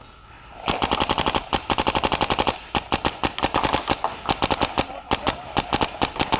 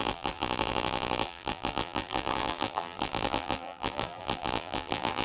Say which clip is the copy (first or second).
second